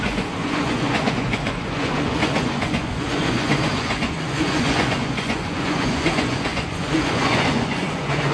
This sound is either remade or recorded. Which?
remade